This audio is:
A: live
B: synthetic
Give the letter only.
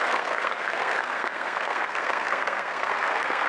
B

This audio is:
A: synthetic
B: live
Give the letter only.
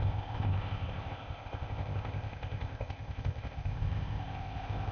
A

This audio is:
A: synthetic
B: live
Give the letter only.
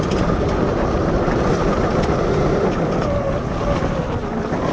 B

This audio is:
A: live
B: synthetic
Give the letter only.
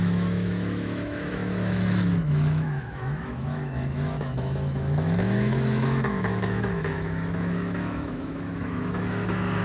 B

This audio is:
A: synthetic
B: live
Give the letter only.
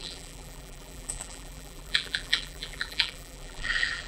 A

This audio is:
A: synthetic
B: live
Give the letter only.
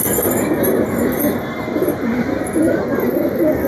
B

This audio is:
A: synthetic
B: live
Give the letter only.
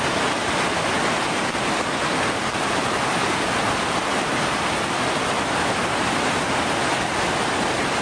B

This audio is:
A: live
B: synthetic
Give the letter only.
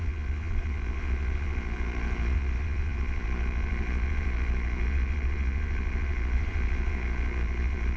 B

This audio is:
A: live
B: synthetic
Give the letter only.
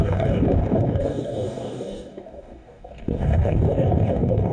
B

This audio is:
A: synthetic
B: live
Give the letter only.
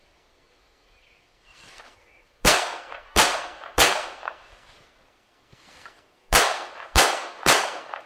A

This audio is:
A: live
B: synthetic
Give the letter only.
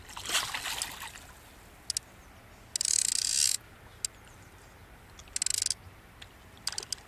A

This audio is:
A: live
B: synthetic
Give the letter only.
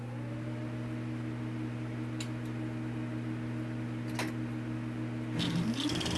A